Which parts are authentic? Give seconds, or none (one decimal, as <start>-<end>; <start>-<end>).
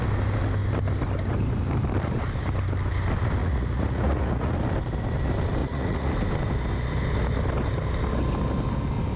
0.0-3.4; 4.5-5.6; 6.1-9.2